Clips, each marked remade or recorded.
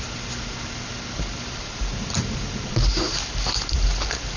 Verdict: recorded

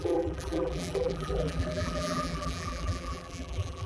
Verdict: remade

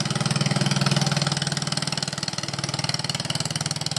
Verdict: recorded